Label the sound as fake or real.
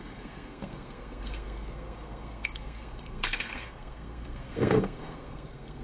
fake